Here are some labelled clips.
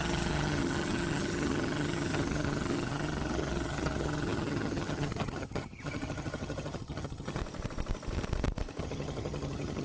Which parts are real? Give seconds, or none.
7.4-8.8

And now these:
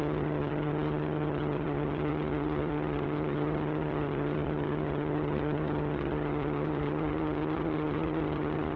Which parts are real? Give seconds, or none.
none